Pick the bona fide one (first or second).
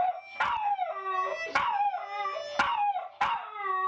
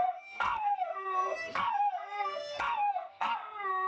first